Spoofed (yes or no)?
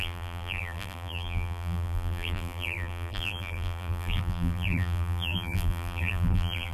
yes